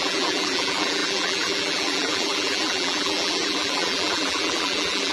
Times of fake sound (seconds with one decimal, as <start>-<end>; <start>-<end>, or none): 0.0-5.1